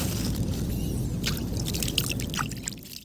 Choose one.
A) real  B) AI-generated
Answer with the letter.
A